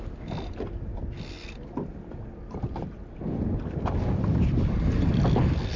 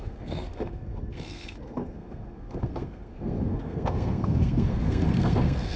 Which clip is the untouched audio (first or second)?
first